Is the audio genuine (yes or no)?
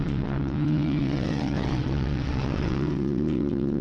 no